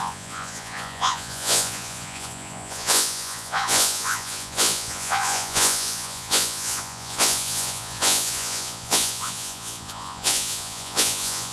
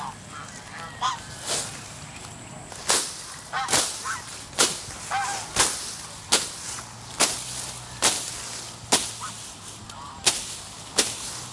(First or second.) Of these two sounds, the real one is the second